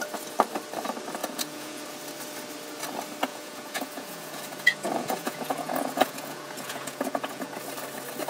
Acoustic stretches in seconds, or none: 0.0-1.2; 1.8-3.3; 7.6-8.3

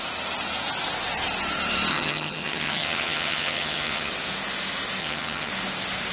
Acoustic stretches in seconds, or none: 0.0-1.9; 4.1-5.0; 5.5-6.1